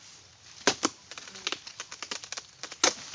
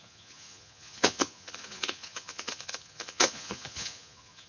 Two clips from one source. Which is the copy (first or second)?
second